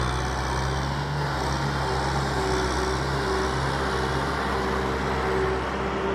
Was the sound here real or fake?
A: real